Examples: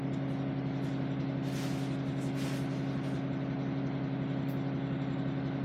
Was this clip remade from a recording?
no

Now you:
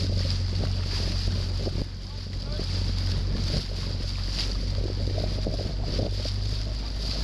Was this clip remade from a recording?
no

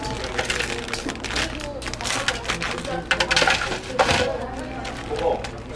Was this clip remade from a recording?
no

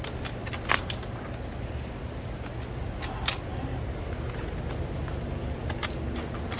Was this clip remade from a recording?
no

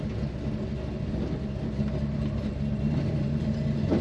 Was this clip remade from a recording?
no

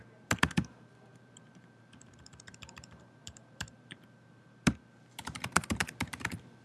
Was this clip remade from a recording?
yes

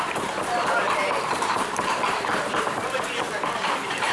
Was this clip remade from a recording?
yes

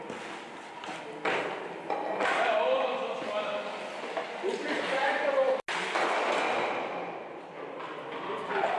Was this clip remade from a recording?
no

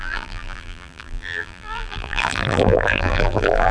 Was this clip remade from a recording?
yes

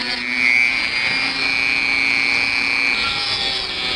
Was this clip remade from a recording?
no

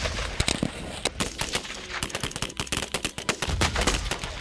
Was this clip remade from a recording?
no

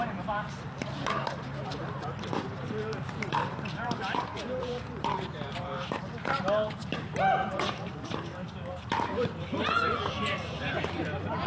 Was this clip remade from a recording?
yes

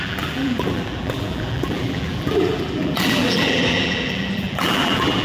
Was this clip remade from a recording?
yes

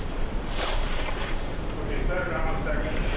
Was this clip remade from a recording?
yes